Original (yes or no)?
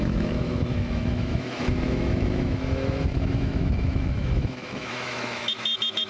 no